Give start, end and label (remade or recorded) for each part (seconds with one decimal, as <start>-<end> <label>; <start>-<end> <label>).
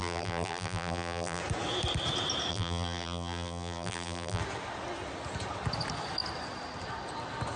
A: 0.0-1.4 remade; 1.4-2.5 recorded; 2.5-4.4 remade; 4.4-7.6 recorded